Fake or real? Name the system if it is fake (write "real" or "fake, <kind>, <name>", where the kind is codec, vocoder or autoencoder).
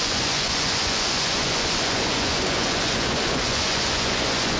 fake, vocoder, Vocos